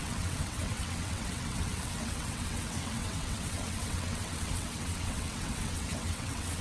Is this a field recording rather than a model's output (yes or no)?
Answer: no